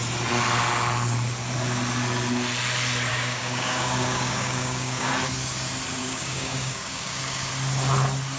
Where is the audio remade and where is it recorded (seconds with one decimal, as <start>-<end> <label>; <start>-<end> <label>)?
0.0-3.1 recorded; 3.1-5.1 remade; 5.1-6.0 recorded; 6.0-7.5 remade; 7.5-8.4 recorded